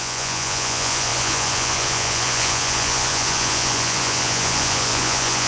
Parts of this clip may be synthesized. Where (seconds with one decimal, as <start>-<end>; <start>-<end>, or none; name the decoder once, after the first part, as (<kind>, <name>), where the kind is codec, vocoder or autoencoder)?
0.0-5.5 (vocoder, Vocos)